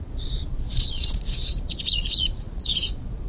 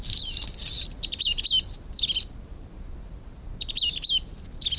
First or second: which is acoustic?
second